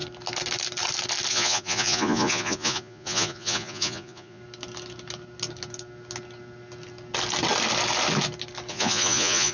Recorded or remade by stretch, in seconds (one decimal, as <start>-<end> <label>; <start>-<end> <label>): 0.0-1.3 recorded; 1.3-4.4 remade; 4.4-8.7 recorded; 8.7-9.5 remade